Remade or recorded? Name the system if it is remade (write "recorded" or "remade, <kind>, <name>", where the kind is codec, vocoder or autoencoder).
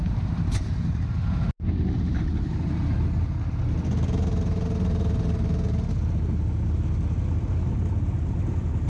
recorded